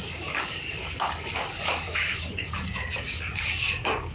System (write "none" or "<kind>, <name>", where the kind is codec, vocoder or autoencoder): codec, DAC